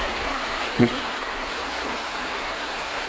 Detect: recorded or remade remade